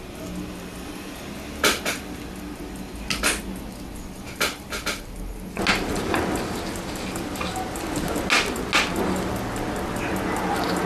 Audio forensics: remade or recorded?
recorded